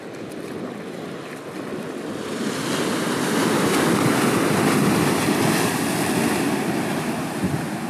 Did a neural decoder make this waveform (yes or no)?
no